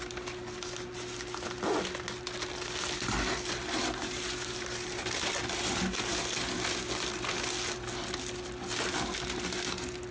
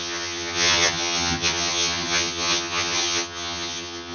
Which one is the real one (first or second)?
first